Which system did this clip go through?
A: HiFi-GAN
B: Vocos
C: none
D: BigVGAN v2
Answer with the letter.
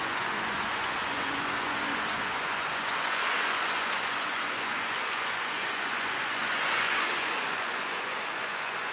B